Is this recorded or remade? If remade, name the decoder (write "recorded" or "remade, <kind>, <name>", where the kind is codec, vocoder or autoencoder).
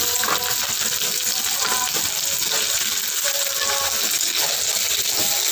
recorded